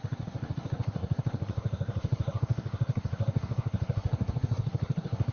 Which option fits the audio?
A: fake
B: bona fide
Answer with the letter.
A